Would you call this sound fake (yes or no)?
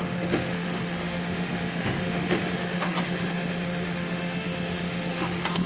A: yes